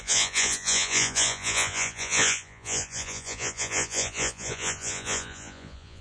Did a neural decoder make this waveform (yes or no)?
yes